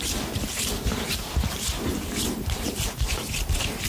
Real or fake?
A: fake